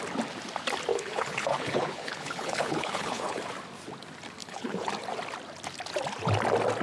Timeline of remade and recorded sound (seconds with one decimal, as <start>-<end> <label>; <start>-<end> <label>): 0.0-0.9 recorded; 0.9-3.4 remade; 3.4-4.4 recorded; 4.4-4.9 remade; 4.9-6.8 recorded